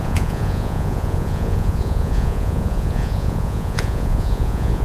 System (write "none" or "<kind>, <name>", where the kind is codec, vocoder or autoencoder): vocoder, Vocos